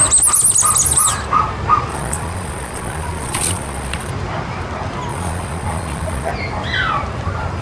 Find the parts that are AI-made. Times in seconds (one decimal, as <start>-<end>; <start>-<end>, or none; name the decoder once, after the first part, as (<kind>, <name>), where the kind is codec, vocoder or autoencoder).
1.9-4.1 (vocoder, Vocos); 5.1-6.3